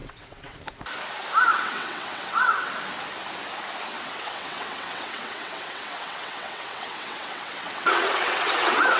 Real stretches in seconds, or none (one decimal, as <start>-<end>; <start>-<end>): 0.6-1.5; 2.7-3.9